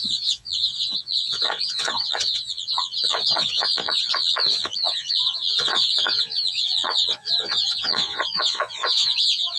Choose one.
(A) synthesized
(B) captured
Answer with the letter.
A